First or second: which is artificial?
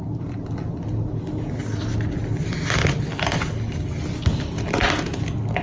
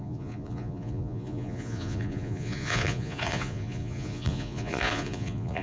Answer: second